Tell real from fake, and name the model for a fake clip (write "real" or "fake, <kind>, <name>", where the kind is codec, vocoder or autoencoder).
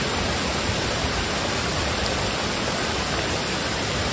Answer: real